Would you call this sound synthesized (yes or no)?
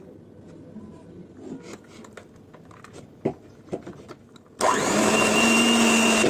no